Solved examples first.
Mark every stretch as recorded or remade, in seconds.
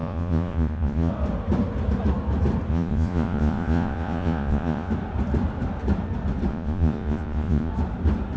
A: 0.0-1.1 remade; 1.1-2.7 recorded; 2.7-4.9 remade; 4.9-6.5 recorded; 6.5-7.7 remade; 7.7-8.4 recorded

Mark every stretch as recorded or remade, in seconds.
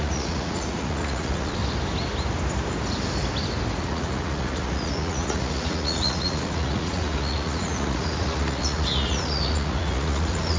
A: 0.0-1.6 remade; 1.6-3.8 recorded; 3.8-10.6 remade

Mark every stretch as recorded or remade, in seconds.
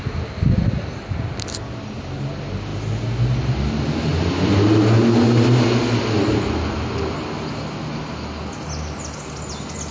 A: 0.0-9.9 recorded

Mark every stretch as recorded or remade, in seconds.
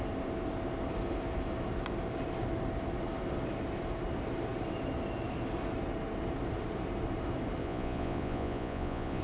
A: 0.0-7.6 recorded; 7.6-9.2 remade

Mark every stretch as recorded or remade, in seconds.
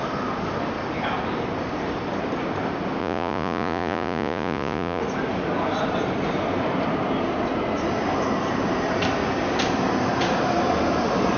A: 0.0-3.0 recorded; 3.0-5.0 remade; 5.0-11.4 recorded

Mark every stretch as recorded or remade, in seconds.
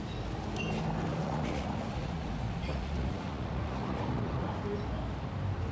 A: 0.0-1.1 recorded; 1.1-4.5 remade; 4.5-5.7 recorded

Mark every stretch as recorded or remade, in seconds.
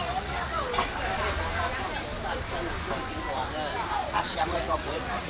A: 0.0-0.7 remade; 0.7-3.9 recorded; 3.9-5.3 remade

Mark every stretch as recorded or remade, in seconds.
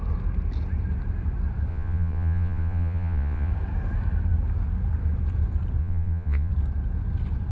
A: 0.0-1.7 recorded; 1.7-3.5 remade; 3.5-5.8 recorded; 5.8-6.5 remade; 6.5-7.5 recorded